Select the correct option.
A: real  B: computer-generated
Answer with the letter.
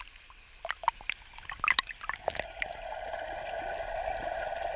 A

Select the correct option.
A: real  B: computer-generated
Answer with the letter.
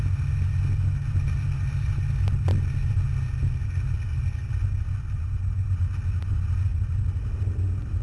A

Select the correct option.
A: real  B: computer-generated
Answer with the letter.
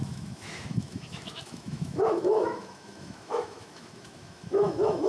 B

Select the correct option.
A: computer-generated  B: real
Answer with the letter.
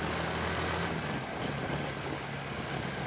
B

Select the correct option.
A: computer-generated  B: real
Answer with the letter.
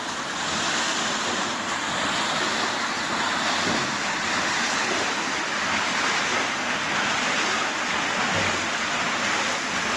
B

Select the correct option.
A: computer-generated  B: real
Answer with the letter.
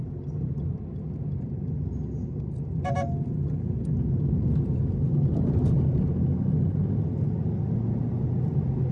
B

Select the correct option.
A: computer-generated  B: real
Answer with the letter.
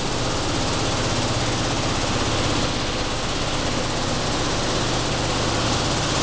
B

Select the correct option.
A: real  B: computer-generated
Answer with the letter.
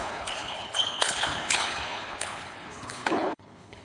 B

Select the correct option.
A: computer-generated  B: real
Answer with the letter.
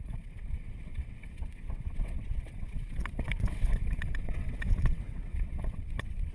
A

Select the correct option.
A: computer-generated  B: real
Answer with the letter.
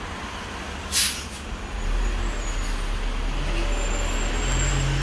B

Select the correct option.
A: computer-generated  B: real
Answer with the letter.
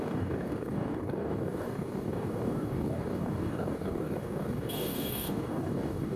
A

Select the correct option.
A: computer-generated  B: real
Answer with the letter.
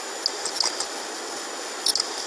B